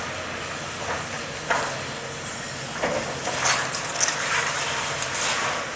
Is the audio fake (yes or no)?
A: no